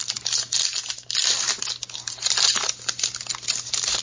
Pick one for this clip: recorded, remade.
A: recorded